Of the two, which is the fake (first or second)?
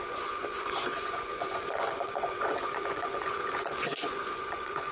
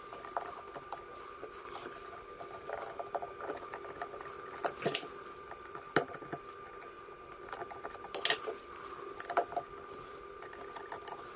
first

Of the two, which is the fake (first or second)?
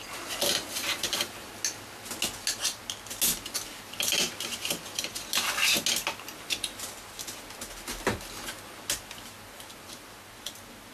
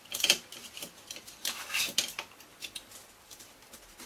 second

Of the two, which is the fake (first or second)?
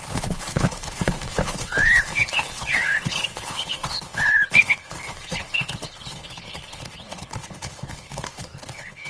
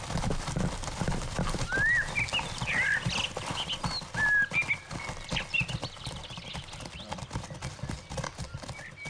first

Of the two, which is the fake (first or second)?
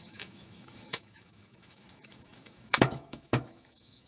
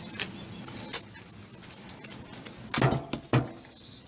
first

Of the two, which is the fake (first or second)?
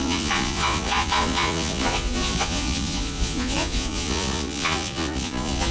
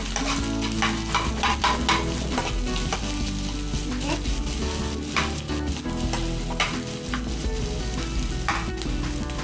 first